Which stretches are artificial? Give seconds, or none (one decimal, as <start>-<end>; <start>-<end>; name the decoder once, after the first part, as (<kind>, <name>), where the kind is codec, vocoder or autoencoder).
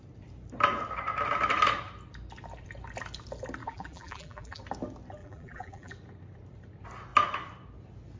3.6-4.6 (vocoder, BigVGAN v2); 5.2-5.9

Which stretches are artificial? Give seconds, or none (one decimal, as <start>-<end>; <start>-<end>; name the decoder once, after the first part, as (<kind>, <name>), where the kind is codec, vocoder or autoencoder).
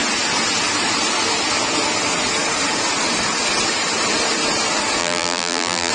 5.0-5.9 (vocoder, BigVGAN v2)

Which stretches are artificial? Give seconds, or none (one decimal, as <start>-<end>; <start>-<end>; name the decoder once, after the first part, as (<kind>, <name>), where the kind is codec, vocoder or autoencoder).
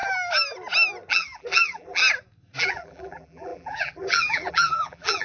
1.1-2.0 (vocoder, BigVGAN v2); 2.6-5.2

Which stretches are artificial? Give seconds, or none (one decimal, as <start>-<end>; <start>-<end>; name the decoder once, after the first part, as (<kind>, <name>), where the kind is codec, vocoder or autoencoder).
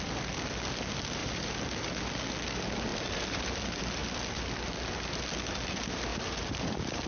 1.2-2.0 (vocoder, BigVGAN v2); 2.9-3.5; 6.1-7.1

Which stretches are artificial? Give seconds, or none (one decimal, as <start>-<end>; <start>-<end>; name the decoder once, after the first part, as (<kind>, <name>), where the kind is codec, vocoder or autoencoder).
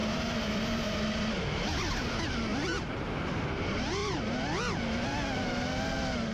0.0-1.3 (vocoder, BigVGAN v2); 2.5-3.5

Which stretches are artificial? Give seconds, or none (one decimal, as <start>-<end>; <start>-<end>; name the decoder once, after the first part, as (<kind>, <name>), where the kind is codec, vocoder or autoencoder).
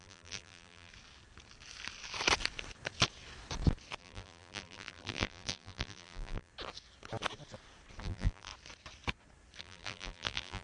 0.0-0.9 (vocoder, BigVGAN v2); 4.0-6.5; 8.0-8.5; 9.6-10.6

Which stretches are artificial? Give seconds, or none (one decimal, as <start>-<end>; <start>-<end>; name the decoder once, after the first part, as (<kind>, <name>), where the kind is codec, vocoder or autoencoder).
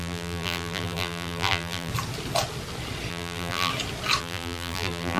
0.0-1.9 (vocoder, BigVGAN v2); 3.1-3.7; 4.2-5.2